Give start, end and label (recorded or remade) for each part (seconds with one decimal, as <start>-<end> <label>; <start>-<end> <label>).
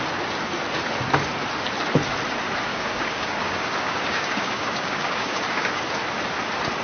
0.0-2.7 recorded; 2.7-5.8 remade; 5.8-6.8 recorded